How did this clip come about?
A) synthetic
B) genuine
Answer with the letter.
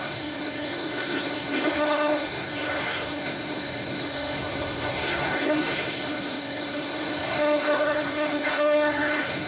A